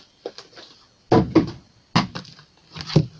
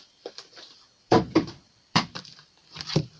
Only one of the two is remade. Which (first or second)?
second